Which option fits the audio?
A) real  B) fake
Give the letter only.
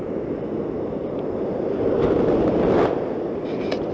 A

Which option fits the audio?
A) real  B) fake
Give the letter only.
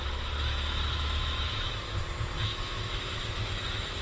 B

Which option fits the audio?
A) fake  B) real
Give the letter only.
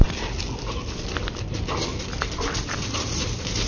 B